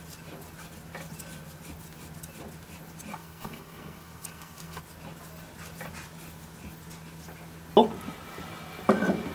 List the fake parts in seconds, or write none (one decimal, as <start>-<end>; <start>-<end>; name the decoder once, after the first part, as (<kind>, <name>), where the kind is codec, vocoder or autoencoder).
3.1-4.8 (codec, SNAC)